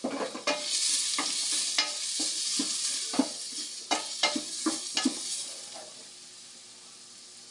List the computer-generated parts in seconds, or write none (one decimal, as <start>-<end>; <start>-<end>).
none